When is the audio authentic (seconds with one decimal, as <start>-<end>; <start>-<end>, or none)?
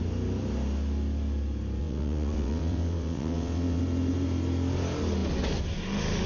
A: 0.0-1.8; 3.8-6.3